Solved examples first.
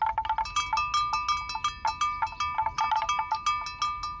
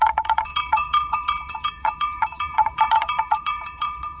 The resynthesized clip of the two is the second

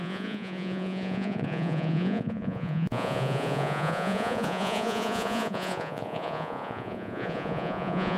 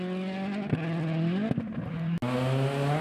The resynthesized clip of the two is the first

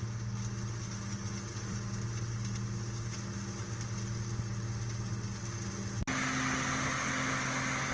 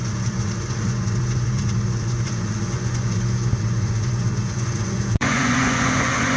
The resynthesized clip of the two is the second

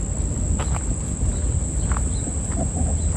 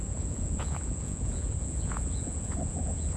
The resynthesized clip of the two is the second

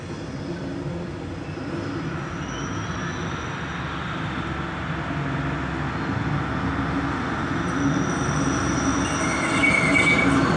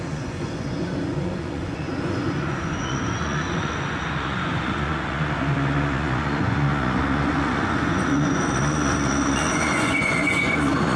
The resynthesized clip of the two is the second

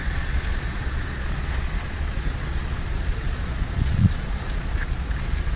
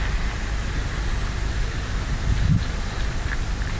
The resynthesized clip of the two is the first